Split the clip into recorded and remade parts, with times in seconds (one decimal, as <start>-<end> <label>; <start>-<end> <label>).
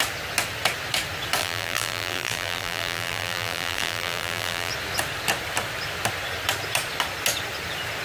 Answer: 0.0-1.4 recorded; 1.4-4.7 remade; 4.7-8.0 recorded